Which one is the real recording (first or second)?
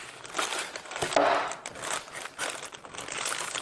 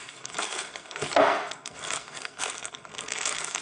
first